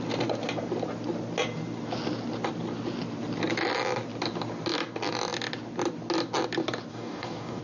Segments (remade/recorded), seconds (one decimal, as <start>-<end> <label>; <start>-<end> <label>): 0.0-6.9 recorded; 6.9-7.6 remade